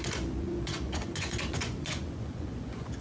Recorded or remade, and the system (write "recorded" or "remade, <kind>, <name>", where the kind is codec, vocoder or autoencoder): remade, vocoder, Vocos